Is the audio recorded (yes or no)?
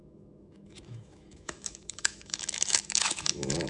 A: no